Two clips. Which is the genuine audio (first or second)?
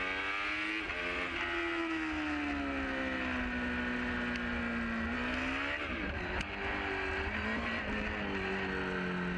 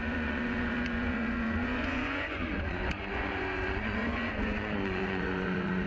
first